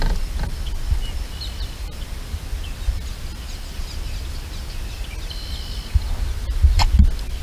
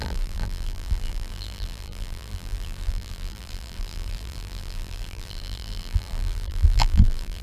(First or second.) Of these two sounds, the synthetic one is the second